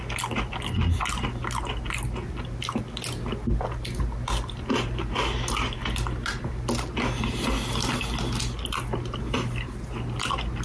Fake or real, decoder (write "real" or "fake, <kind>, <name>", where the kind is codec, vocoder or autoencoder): real